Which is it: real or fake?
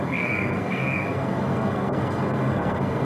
fake